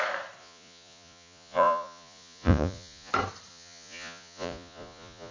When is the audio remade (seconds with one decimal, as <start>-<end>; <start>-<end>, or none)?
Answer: 0.4-3.1; 3.5-5.3

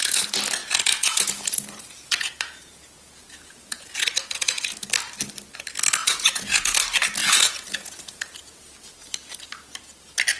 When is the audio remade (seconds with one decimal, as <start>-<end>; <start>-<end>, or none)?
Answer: 0.6-4.9; 6.0-6.8; 7.2-8.6

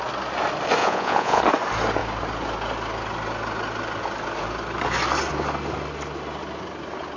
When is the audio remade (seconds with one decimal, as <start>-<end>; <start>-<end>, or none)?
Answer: 0.8-1.4

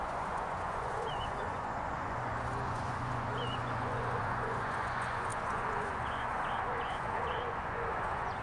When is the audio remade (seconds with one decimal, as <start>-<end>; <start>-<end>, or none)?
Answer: 0.0-8.4

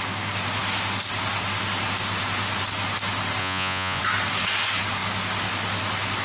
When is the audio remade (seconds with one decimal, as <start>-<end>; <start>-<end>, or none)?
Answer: 3.4-4.0